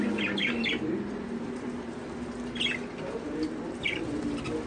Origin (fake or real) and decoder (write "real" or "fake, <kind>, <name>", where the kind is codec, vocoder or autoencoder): real